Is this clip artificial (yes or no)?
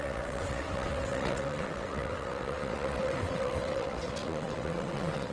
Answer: yes